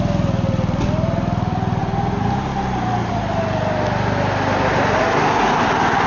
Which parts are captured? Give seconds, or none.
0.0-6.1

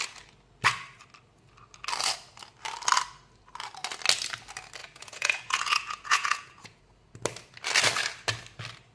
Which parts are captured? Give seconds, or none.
0.0-4.8; 6.8-8.9

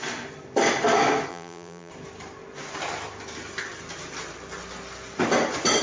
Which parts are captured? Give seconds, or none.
0.0-1.3; 1.9-5.8

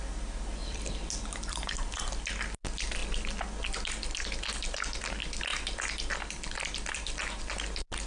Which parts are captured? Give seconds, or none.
0.0-0.6; 2.3-5.5; 7.4-8.1

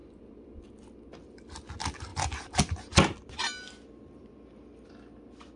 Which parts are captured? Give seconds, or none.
0.6-5.6

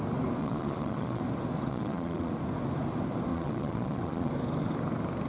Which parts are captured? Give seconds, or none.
0.0-0.4; 1.2-1.7; 2.3-3.3; 4.3-5.3